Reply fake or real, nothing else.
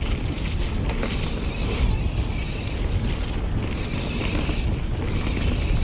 real